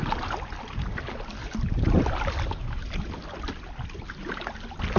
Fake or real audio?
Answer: real